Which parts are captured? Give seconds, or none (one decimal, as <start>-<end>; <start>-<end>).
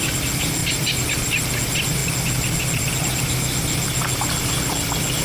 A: 0.0-0.6; 1.5-5.2